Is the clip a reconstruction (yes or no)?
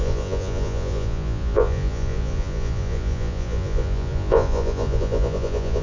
yes